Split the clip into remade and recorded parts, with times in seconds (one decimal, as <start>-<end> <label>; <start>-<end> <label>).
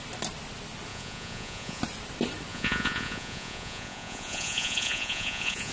0.0-0.9 recorded; 0.9-1.8 remade; 1.8-2.5 recorded; 2.5-5.7 remade